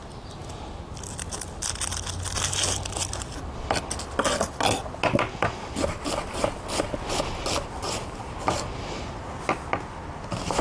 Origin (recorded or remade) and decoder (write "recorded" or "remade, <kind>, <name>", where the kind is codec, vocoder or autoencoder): recorded